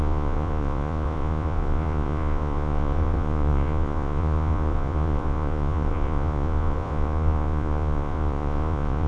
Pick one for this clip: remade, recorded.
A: remade